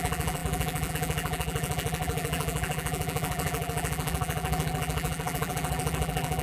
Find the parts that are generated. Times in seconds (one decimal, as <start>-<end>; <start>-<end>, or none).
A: 0.0-6.4